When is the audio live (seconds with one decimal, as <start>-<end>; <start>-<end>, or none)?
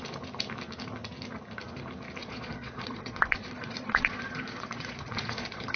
0.0-2.2